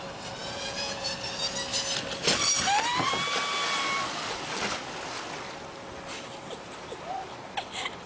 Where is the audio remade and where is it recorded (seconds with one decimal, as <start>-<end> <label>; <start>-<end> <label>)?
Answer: 0.0-0.4 recorded; 0.4-1.1 remade; 1.1-8.1 recorded

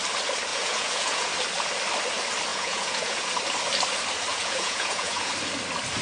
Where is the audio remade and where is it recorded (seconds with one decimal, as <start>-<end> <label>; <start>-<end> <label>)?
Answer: 0.0-0.5 recorded; 0.5-1.3 remade; 1.3-2.5 recorded; 2.5-3.3 remade; 3.3-4.3 recorded; 4.3-5.3 remade; 5.3-6.0 recorded

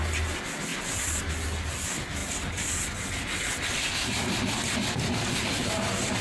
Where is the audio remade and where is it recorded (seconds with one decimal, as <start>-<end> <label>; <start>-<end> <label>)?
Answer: 0.0-6.2 recorded

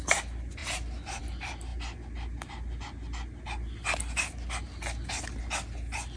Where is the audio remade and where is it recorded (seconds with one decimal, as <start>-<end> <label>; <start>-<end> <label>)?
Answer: 0.0-6.2 recorded

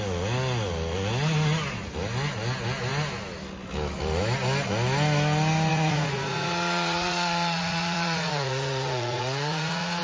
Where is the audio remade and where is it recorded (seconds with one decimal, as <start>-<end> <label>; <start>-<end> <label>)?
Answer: 0.0-5.7 recorded; 5.7-10.0 remade

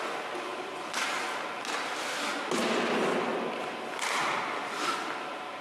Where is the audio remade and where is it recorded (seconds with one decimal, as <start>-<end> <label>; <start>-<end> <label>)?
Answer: 0.0-5.6 recorded

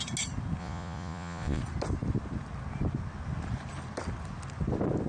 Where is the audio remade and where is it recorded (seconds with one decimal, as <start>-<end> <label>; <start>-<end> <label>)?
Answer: 0.0-0.6 recorded; 0.6-1.6 remade; 1.6-5.1 recorded

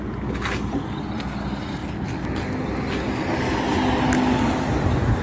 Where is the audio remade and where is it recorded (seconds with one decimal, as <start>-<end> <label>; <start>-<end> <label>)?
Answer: 0.0-5.2 recorded